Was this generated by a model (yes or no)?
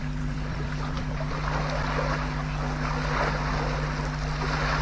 yes